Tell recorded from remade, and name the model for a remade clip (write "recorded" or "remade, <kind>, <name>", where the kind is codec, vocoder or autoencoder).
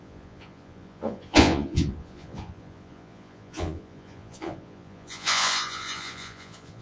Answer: remade, vocoder, Vocos